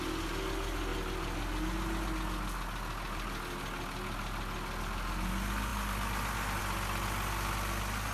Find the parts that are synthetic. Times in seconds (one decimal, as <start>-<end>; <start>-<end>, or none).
none